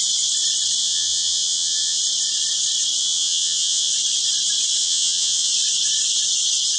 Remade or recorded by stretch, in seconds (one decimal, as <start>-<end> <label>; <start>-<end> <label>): 0.0-0.8 recorded; 0.8-2.0 remade; 2.0-3.0 recorded; 3.0-3.9 remade; 3.9-4.8 recorded; 4.8-5.5 remade; 5.5-6.8 recorded